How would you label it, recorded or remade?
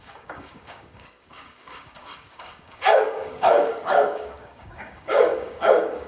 remade